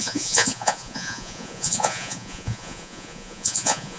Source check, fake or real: fake